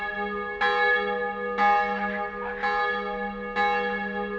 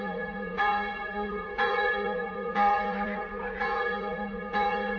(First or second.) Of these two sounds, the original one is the first